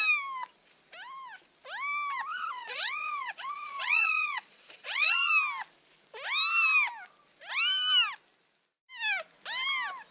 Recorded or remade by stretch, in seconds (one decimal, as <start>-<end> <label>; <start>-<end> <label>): 0.0-2.3 recorded; 2.3-5.3 remade; 5.3-10.1 recorded